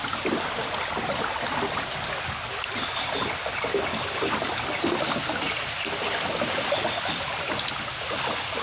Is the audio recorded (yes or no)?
yes